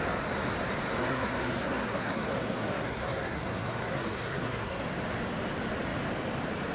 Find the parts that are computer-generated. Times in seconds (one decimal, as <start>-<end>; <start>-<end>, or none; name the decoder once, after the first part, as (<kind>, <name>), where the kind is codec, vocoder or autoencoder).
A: 1.0-4.8 (codec, SNAC)